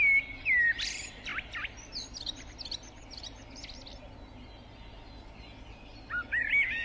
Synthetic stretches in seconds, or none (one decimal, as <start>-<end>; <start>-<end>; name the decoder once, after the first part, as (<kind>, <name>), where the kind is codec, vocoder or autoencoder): none